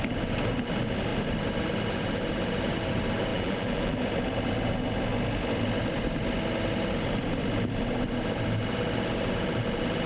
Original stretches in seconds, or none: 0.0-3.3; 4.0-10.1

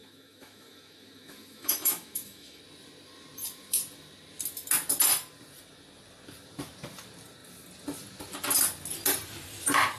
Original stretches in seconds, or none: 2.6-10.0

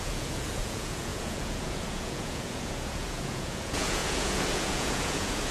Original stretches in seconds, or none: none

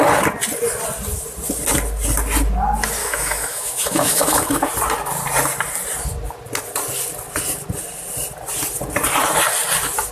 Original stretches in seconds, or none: 0.0-3.0; 4.7-10.1